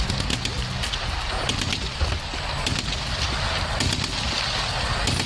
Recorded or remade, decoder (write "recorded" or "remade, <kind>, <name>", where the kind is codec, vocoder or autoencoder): recorded